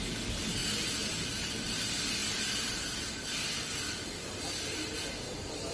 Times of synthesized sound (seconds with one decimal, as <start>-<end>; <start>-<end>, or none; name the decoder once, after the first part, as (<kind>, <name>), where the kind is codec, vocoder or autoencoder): none